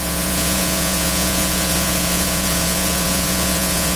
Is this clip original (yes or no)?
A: no